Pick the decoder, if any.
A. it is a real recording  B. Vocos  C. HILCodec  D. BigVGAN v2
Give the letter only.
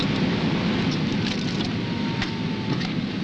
A